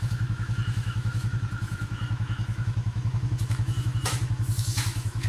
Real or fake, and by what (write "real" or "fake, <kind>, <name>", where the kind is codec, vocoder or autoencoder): fake, autoencoder, DAC-VAE